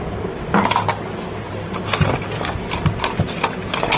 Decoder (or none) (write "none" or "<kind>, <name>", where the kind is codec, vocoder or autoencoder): none